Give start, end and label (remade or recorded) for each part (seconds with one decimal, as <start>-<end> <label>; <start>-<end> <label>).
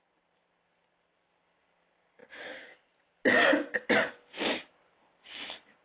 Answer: 0.0-5.8 recorded